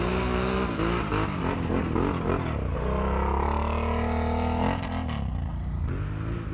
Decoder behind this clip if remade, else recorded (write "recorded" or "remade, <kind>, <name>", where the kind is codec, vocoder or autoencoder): recorded